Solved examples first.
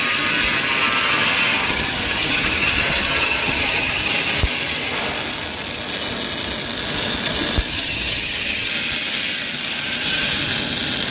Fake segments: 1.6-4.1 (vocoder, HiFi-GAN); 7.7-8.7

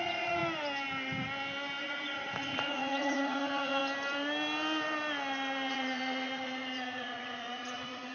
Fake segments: 0.0-0.4 (vocoder, Vocos); 1.8-3.8; 5.7-8.1

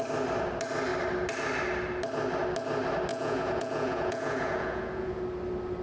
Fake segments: 3.1-5.2 (vocoder, Vocos)

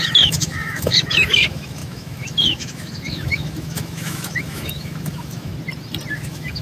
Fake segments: 0.0-5.5 (autoencoder, DAC-VAE); 6.1-6.6

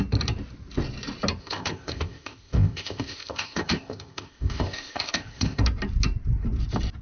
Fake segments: 1.4-5.6 (codec, ZipCodec)

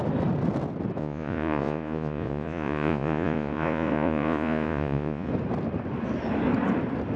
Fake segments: 1.0-5.3 (vocoder, Vocos)

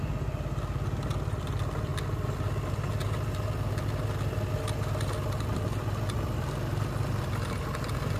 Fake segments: none

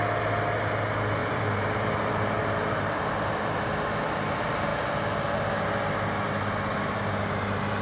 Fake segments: 1.2-3.1 (vocoder, BigVGAN v2)